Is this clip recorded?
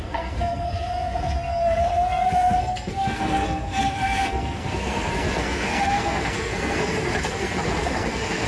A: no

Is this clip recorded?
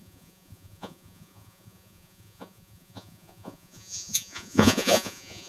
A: no